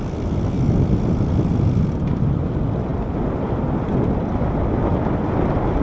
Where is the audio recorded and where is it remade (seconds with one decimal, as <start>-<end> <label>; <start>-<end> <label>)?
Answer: 0.0-2.9 recorded; 2.9-4.0 remade; 4.0-5.8 recorded